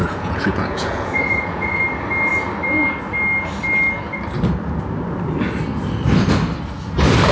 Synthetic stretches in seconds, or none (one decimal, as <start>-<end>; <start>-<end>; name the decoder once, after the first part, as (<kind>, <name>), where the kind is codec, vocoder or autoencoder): 0.0-1.8 (vocoder, Vocos)